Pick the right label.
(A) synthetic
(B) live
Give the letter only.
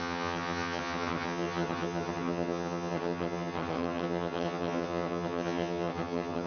A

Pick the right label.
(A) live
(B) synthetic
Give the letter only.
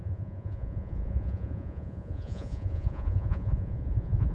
B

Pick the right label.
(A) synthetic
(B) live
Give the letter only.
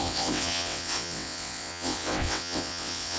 A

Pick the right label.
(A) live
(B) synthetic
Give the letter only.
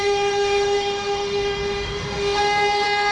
B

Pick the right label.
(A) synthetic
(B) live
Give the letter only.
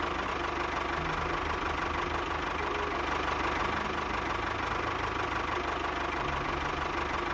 B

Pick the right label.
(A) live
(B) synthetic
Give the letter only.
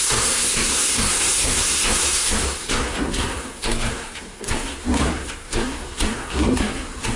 B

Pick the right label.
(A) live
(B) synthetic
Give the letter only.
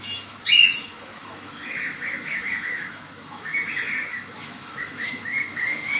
B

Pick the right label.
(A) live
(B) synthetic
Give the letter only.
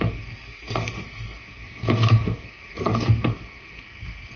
B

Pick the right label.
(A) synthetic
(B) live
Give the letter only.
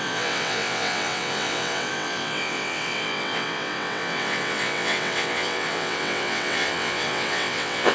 A